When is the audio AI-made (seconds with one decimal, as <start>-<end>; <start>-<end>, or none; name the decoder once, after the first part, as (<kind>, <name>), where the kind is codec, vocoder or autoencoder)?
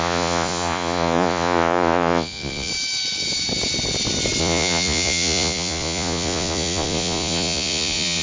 0.0-2.7 (vocoder, Vocos); 4.4-8.2